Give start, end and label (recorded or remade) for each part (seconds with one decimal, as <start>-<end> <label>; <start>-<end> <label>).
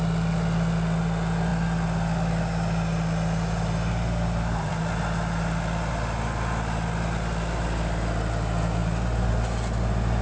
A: 0.0-10.2 recorded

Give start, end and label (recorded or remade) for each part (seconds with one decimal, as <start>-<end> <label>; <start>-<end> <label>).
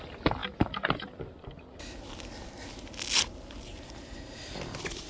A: 0.0-5.1 recorded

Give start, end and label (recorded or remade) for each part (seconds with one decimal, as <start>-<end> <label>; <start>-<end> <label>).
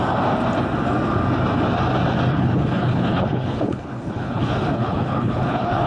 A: 0.0-2.3 recorded; 2.3-5.9 remade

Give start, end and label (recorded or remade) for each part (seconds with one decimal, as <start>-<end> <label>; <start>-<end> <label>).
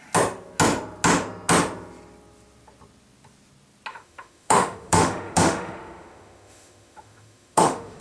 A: 0.0-3.9 recorded; 3.9-8.0 remade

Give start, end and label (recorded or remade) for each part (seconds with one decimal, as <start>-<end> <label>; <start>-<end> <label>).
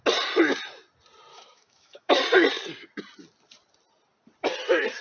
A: 0.0-1.3 recorded; 1.3-2.2 remade; 2.2-5.0 recorded